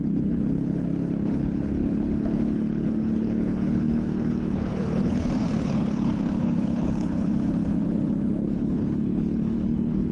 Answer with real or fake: fake